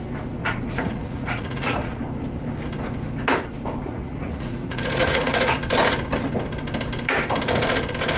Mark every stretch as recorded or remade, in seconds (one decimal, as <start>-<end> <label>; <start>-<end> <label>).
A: 0.0-0.4 recorded; 0.4-2.0 remade; 2.0-3.8 recorded; 3.8-5.6 remade; 5.6-8.2 recorded